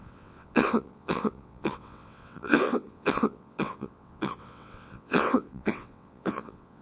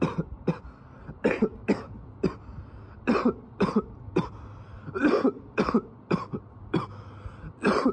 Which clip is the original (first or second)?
second